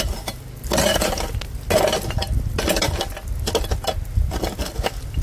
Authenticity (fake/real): real